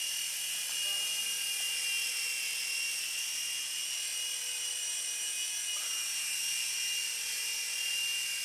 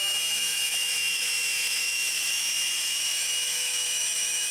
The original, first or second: first